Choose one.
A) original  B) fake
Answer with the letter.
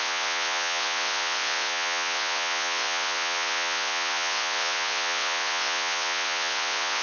B